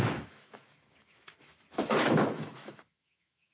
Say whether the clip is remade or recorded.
remade